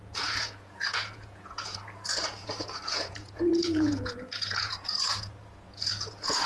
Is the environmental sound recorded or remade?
remade